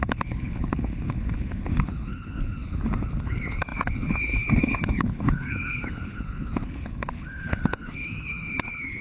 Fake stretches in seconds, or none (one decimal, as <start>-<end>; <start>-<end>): 0.0-9.0